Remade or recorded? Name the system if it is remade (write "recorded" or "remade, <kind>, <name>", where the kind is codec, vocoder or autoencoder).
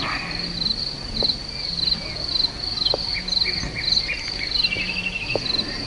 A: recorded